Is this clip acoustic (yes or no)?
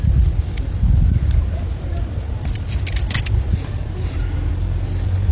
yes